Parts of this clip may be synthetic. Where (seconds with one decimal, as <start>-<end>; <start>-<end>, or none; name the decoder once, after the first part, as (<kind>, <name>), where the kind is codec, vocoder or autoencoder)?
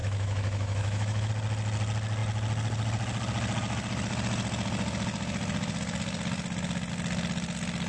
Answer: 0.0-1.3 (autoencoder, DAC-VAE)